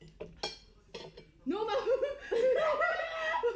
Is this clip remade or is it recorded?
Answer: recorded